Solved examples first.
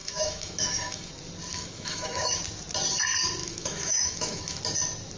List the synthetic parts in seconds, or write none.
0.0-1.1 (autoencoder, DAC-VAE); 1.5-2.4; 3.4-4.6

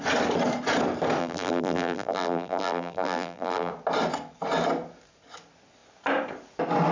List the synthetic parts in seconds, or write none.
1.2-3.7 (vocoder, BigVGAN v2)

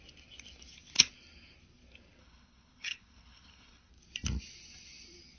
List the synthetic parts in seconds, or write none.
2.2-3.9 (codec, HILCodec)

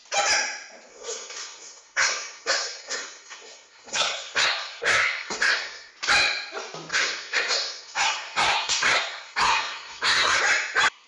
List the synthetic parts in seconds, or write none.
0.9-5.9 (codec, SNAC); 6.9-10.4

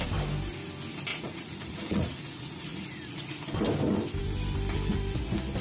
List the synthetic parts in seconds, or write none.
1.1-3.4 (vocoder, Vocos)

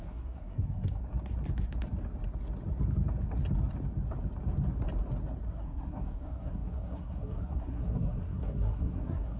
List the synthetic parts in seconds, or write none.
0.0-1.0 (codec, SNAC); 5.5-9.4

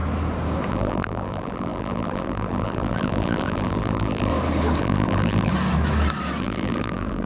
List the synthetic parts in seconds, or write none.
0.7-4.3 (vocoder, BigVGAN v2); 4.8-5.5; 6.4-7.3

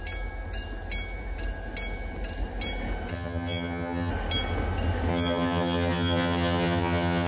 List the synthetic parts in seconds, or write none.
3.1-4.1 (vocoder, HiFi-GAN); 5.1-7.3